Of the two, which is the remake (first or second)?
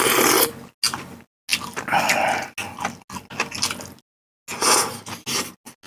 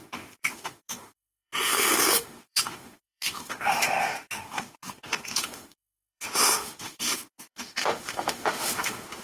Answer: second